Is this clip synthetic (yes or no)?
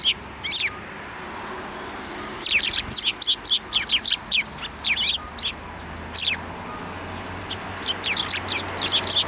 no